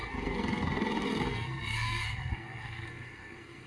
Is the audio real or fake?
fake